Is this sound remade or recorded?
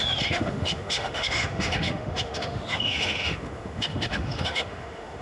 remade